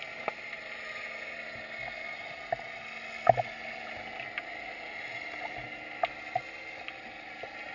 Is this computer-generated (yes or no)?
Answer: no